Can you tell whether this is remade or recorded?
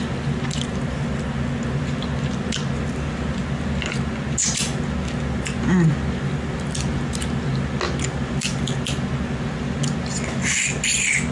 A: recorded